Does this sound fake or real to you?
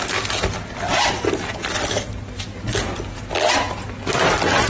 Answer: real